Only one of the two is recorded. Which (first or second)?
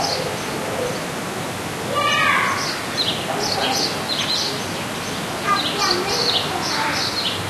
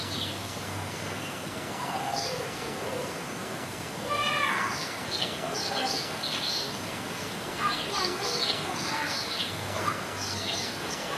first